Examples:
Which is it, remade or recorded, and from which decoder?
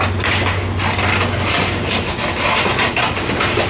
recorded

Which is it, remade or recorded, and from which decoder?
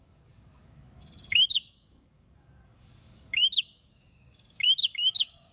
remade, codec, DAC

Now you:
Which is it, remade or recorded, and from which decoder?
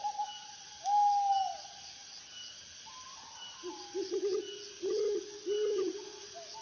recorded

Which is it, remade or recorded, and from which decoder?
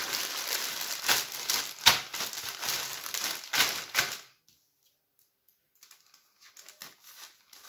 recorded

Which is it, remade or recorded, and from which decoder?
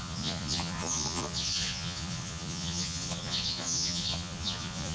remade, vocoder, Vocos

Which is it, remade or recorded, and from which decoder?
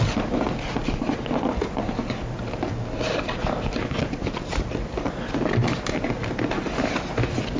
recorded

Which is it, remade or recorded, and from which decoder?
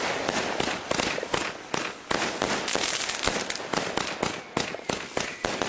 recorded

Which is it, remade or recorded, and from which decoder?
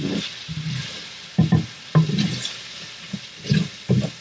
recorded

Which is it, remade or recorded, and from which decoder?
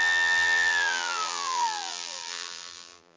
remade, vocoder, BigVGAN v2